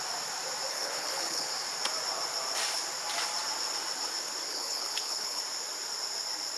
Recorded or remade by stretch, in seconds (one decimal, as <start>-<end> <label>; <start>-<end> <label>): 0.0-0.7 recorded; 0.7-1.5 remade; 1.5-4.5 recorded; 4.5-5.4 remade; 5.4-6.6 recorded